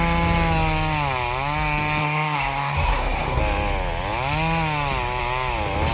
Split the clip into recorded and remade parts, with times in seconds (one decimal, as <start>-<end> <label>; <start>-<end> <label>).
0.0-2.0 recorded; 2.0-3.4 remade; 3.4-5.9 recorded